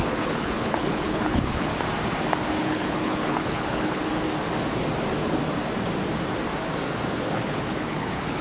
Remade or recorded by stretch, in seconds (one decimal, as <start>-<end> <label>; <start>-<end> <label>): 0.0-1.7 remade; 1.7-2.6 recorded; 2.6-4.0 remade; 4.0-7.3 recorded; 7.3-8.4 remade